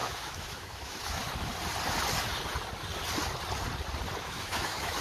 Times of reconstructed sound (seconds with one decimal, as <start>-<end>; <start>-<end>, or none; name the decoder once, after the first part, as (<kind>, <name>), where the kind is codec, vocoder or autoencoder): 0.0-1.2 (autoencoder, DAC-VAE); 4.2-5.0